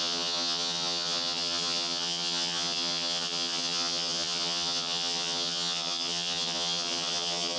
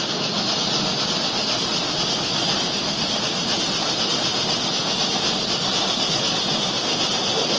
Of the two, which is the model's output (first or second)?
first